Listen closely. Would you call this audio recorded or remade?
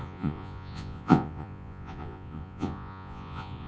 remade